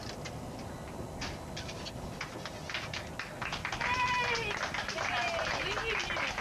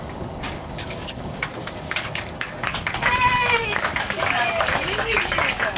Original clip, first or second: first